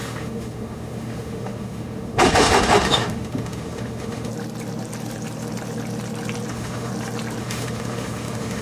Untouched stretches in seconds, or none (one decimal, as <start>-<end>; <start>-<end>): 4.3-6.5; 6.9-7.4

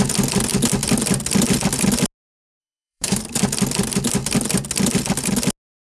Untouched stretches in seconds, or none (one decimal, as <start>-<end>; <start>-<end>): 0.0-2.6; 3.2-5.9

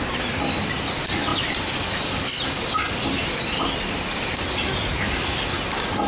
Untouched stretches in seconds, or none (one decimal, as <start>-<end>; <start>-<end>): 0.0-6.1